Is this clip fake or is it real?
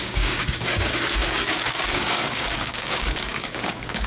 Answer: fake